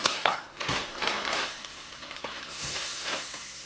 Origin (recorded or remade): remade